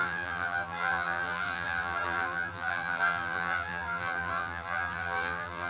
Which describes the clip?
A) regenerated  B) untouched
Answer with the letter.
A